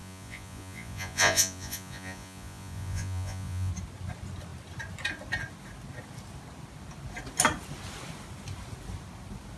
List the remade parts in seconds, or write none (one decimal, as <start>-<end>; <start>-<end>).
0.0-3.7